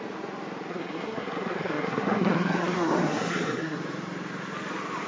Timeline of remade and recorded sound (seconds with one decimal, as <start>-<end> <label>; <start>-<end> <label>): 0.0-0.7 recorded; 0.7-3.8 remade; 3.8-5.1 recorded